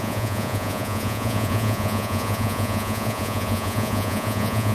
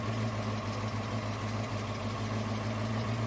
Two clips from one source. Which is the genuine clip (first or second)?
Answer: second